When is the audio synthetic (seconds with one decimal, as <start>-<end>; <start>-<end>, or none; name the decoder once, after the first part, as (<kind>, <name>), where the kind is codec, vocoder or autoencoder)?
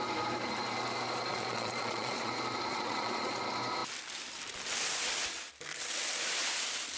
1.3-2.3 (vocoder, Vocos); 2.7-3.4